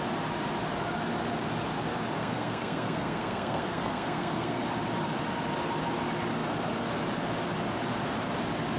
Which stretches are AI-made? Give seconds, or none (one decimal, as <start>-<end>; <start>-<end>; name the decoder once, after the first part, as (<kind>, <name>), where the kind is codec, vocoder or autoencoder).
2.2-4.6 (codec, SNAC)